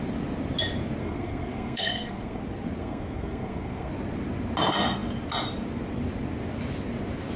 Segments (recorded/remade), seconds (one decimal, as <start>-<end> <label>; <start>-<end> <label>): 0.0-1.0 recorded; 1.0-2.4 remade; 2.4-2.8 recorded; 2.8-3.9 remade; 3.9-7.4 recorded